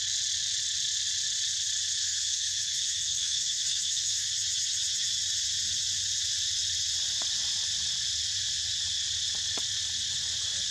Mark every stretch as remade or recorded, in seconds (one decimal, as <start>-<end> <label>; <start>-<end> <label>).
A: 0.0-2.0 recorded; 2.0-4.3 remade; 4.3-10.7 recorded